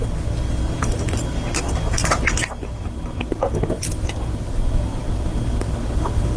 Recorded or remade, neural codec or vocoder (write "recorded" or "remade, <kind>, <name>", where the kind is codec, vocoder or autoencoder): recorded